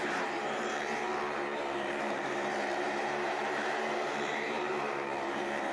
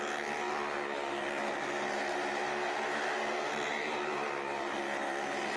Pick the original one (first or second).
second